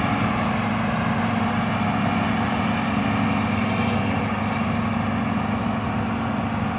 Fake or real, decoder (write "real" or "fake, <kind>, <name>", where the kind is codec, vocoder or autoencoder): real